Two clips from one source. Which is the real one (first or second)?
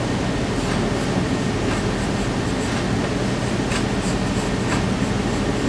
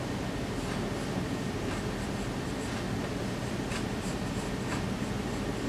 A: first